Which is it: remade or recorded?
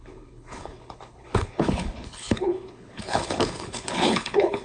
remade